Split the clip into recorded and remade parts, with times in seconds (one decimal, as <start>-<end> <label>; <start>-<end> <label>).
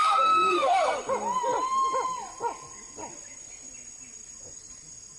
0.0-1.0 remade; 1.0-5.2 recorded